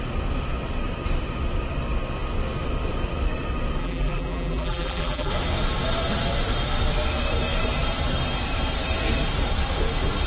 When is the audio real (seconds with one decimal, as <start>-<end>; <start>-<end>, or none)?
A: 0.0-3.8; 5.3-10.3